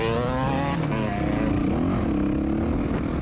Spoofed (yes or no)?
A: no